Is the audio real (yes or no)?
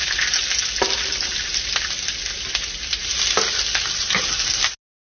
yes